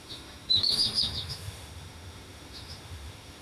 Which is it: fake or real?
fake